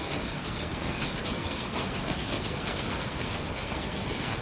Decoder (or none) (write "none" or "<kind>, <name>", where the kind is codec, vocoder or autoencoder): codec, SNAC